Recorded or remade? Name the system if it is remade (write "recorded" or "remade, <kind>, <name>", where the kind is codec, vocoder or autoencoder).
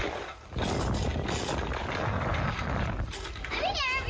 recorded